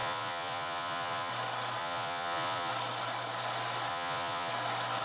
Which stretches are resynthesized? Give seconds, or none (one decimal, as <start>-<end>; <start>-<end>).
0.0-1.3; 1.8-2.7; 3.9-4.5